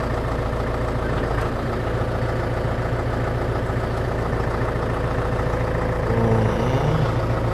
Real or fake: real